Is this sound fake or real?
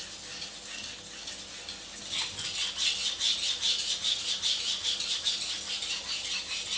real